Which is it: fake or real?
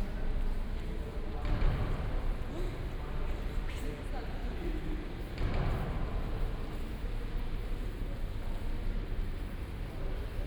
real